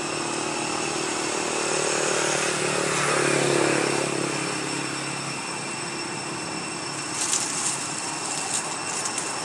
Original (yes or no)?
yes